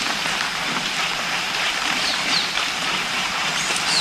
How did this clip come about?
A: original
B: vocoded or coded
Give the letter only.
A